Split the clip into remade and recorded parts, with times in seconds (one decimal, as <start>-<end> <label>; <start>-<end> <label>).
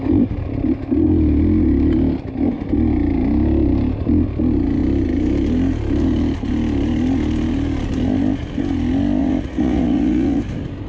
0.0-9.2 recorded; 9.2-10.4 remade; 10.4-10.9 recorded